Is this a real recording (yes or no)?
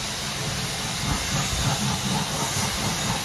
yes